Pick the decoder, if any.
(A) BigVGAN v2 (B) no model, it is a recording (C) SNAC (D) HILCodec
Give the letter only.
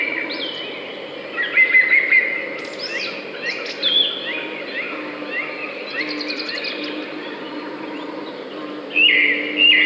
B